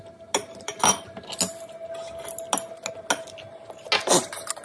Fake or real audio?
real